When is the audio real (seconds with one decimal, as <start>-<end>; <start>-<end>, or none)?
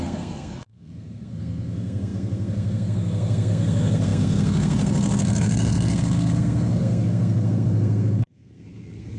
none